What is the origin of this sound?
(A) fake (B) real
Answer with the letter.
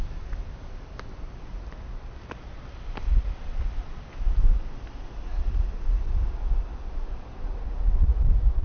B